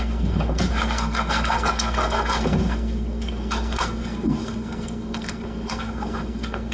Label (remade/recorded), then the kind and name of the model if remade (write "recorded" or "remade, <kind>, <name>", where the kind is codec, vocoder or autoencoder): remade, codec, SNAC